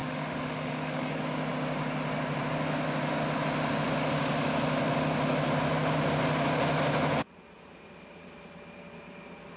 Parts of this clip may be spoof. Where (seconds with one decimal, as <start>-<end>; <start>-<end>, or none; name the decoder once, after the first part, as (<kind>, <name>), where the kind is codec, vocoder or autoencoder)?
0.0-1.1 (autoencoder, DAC-VAE)